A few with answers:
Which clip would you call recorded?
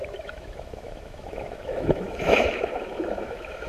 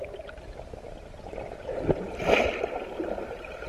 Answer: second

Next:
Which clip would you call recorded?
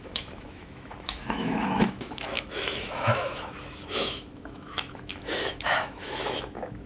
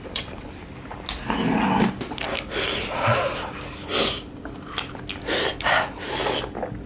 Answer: second